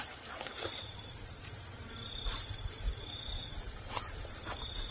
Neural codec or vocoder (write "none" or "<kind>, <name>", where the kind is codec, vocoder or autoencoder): vocoder, BigVGAN v2